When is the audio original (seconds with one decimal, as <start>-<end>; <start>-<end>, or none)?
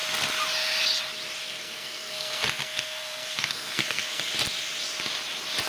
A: 0.0-1.4; 4.3-5.7